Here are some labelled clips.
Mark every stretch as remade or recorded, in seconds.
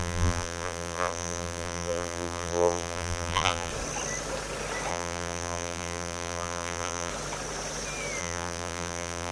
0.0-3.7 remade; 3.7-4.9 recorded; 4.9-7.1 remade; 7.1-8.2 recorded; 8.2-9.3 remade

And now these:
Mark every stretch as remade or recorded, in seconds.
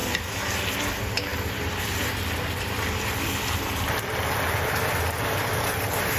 0.0-6.2 recorded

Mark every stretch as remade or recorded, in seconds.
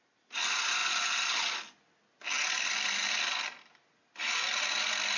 0.0-5.2 recorded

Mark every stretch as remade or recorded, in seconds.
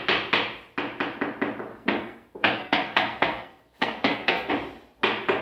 0.0-1.7 recorded; 1.7-4.5 remade; 4.5-5.4 recorded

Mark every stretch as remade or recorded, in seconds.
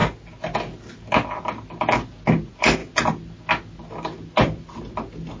0.0-5.4 recorded